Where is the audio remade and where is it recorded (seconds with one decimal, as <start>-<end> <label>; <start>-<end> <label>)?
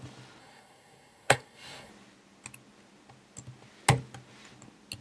0.0-0.4 recorded; 0.4-1.9 remade; 1.9-5.0 recorded